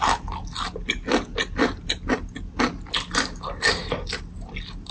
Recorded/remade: recorded